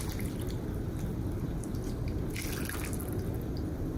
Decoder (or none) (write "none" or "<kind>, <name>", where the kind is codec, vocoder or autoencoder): none